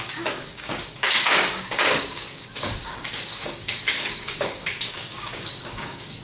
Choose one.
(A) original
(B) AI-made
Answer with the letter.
B